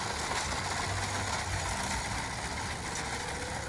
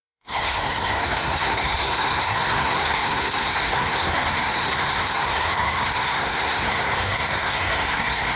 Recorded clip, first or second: first